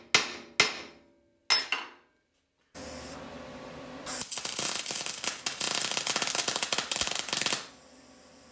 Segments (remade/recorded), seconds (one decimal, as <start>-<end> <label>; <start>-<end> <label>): 0.0-8.5 recorded